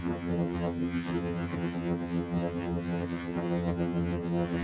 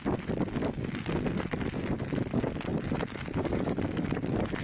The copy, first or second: first